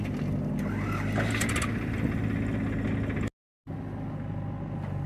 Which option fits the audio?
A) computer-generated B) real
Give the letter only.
B